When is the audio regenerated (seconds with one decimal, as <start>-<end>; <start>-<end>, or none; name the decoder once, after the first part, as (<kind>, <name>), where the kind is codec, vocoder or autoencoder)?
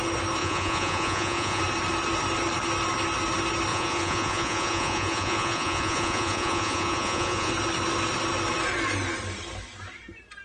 0.4-1.6 (vocoder, Vocos); 3.7-7.5